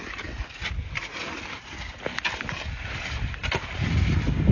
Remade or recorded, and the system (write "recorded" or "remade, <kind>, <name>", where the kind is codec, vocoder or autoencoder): recorded